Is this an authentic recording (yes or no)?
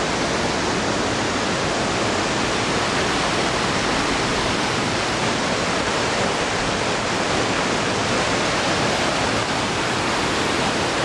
yes